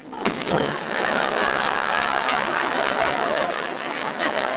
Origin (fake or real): fake